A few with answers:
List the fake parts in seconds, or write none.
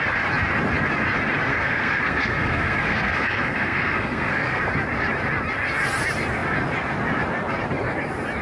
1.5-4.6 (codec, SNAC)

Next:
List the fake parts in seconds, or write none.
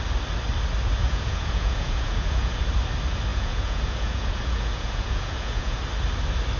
1.0-2.6 (vocoder, Vocos); 3.3-5.8